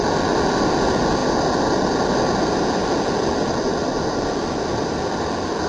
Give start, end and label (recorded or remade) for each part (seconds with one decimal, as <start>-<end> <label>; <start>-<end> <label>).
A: 0.0-5.7 recorded